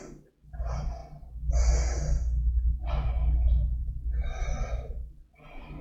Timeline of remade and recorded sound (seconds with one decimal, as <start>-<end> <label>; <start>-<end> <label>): 0.0-5.8 recorded

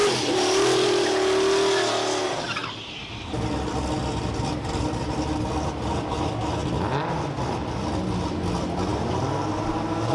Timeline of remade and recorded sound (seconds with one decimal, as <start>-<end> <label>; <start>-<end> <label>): 0.0-10.1 recorded

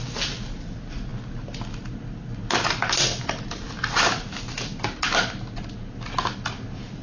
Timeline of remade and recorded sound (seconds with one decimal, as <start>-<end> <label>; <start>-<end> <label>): 0.0-7.0 recorded

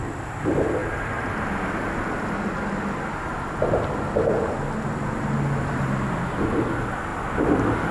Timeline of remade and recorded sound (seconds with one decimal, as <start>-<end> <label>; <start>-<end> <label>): 0.0-7.9 recorded

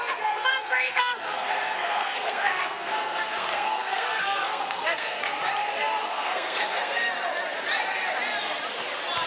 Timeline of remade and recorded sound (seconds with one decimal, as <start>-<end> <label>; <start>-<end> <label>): 0.0-5.2 remade; 5.2-6.1 recorded; 6.1-7.1 remade; 7.1-9.3 recorded

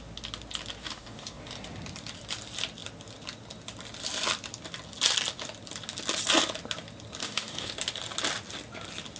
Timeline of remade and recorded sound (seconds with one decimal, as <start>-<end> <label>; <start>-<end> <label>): 0.0-0.8 recorded; 0.8-1.4 remade; 1.4-7.2 recorded; 7.2-7.7 remade; 7.7-9.2 recorded